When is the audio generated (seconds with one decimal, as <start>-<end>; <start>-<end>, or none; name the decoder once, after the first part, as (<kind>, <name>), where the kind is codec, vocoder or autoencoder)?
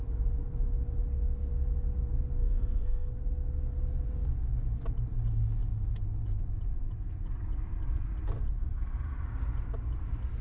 2.4-3.1 (codec, SNAC)